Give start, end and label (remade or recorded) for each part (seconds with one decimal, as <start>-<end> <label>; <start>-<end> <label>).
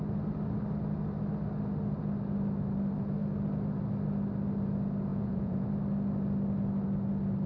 0.0-5.1 recorded; 5.1-5.7 remade; 5.7-7.5 recorded